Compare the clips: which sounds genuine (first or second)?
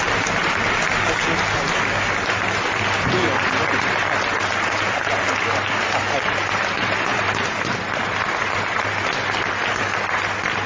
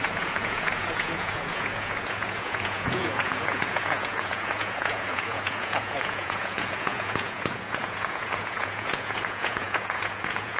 first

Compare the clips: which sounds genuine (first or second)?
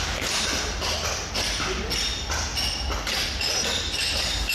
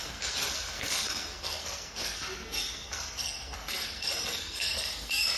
first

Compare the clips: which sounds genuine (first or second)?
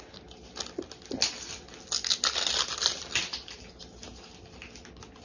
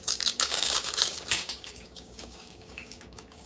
first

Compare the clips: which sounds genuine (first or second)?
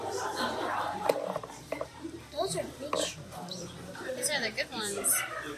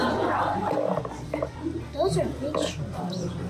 second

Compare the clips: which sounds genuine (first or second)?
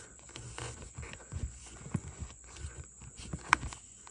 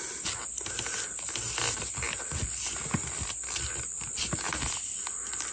second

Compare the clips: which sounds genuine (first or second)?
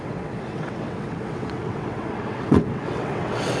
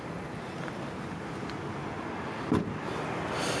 second